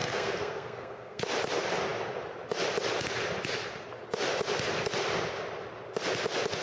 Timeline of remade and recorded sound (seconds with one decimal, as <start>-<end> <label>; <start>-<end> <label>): 0.0-1.2 remade; 1.2-6.6 recorded

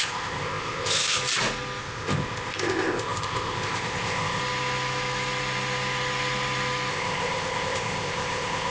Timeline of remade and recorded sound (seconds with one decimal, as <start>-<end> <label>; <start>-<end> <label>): 0.0-1.2 remade; 1.2-1.8 recorded; 1.8-4.4 remade; 4.4-6.9 recorded; 6.9-8.7 remade

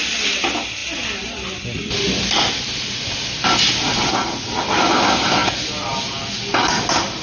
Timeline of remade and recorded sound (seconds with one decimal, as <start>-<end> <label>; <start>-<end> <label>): 0.0-7.2 recorded

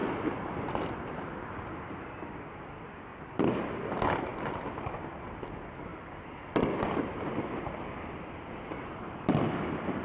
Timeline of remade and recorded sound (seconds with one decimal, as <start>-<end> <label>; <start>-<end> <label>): 0.0-3.1 recorded; 3.1-3.9 remade; 3.9-5.9 recorded; 5.9-6.4 remade; 6.4-10.0 recorded

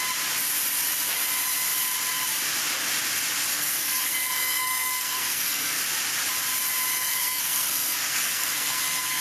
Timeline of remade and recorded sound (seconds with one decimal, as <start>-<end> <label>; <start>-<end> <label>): 0.0-3.5 recorded; 3.5-5.8 remade; 5.8-6.9 recorded; 6.9-9.2 remade

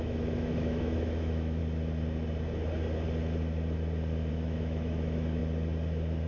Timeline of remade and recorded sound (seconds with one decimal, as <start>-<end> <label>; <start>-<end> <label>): 0.0-1.6 remade; 1.6-4.3 recorded; 4.3-5.4 remade; 5.4-6.3 recorded

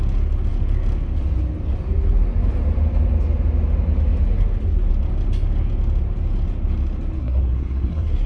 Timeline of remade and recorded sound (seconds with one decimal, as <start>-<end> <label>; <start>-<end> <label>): 0.0-7.2 recorded; 7.2-8.3 remade